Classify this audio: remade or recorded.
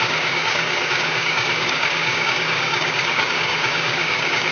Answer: remade